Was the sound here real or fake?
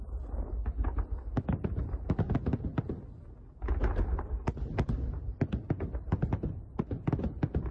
real